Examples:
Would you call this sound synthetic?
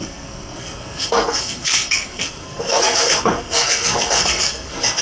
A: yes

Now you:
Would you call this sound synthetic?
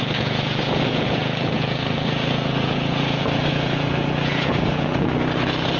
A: yes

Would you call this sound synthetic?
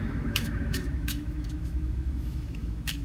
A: yes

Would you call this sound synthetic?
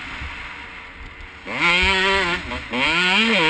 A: no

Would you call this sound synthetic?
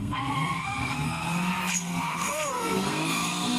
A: yes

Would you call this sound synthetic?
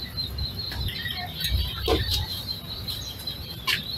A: yes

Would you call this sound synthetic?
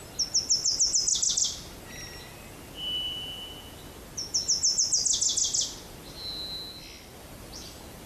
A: no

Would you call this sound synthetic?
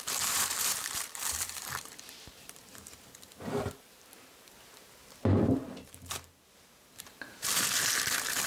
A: yes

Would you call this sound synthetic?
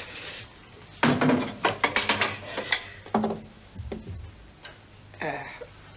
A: no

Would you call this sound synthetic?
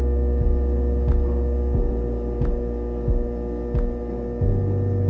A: no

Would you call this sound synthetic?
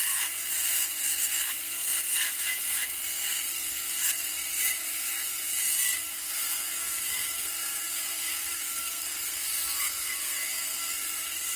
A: yes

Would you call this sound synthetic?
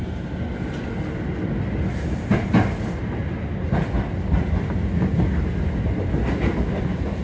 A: no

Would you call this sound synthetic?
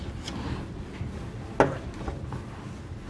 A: no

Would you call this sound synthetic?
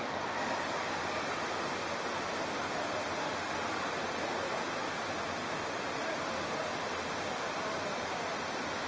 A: no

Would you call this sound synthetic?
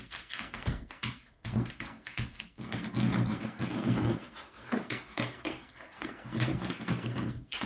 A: yes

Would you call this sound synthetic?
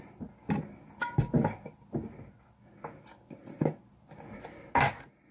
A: no